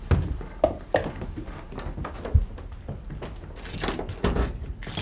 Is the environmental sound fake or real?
real